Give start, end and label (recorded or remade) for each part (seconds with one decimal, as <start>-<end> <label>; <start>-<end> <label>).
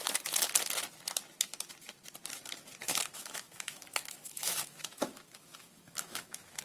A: 0.0-2.8 recorded; 2.8-6.6 remade